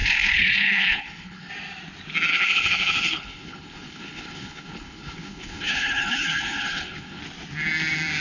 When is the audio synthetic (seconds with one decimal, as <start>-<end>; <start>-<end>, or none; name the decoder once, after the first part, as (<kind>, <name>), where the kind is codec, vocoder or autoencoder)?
0.0-1.5 (codec, HILCodec); 2.3-7.2